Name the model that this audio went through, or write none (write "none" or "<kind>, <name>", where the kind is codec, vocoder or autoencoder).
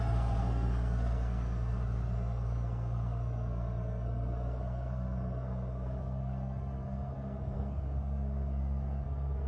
codec, SNAC